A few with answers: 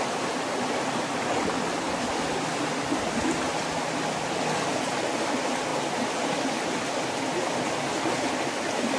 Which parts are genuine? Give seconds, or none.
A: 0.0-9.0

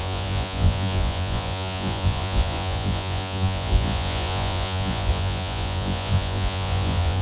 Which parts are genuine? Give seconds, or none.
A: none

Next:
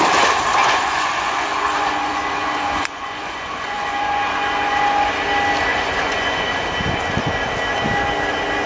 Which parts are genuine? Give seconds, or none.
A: 0.0-0.6; 5.1-5.7; 6.5-8.7

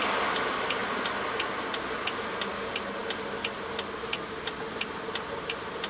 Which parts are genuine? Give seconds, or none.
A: 0.0-5.9

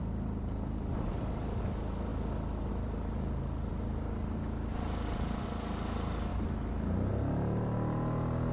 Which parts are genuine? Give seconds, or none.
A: 0.0-8.5

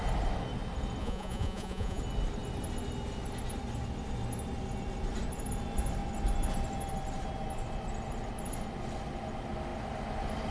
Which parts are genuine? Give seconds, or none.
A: 0.0-1.0; 2.0-10.5

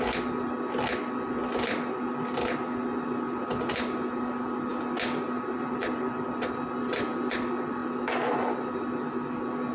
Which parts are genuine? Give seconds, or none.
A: 0.0-9.7

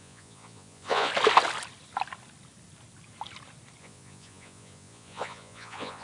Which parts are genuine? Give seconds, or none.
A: 1.1-3.8